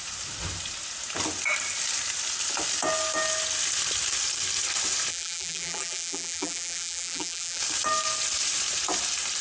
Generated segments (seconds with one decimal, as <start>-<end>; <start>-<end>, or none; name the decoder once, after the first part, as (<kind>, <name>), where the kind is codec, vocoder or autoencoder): 5.1-7.6 (vocoder, BigVGAN v2)